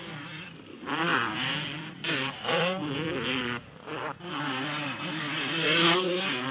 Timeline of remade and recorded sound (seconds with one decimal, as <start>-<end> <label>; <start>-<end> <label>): 0.0-6.5 recorded